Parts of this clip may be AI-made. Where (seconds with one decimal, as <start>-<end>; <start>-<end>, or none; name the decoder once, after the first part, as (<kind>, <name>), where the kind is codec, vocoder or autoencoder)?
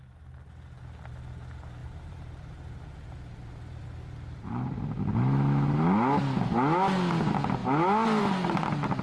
1.8-4.8 (vocoder, BigVGAN v2)